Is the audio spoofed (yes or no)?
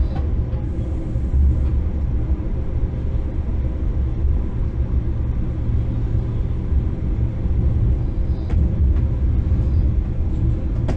no